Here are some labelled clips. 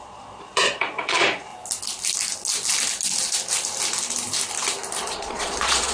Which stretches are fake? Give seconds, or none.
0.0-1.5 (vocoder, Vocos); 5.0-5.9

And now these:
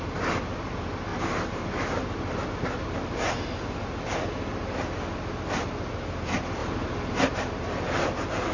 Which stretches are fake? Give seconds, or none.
none

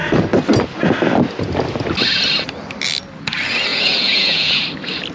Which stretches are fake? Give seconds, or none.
3.7-4.6 (vocoder, Vocos)

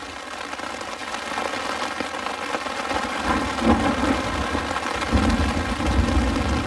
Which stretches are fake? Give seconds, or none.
none